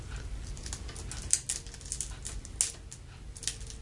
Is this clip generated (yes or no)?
no